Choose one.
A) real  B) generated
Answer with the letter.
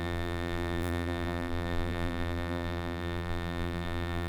B